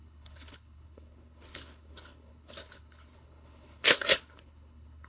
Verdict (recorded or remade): remade